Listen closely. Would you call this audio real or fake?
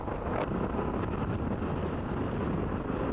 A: real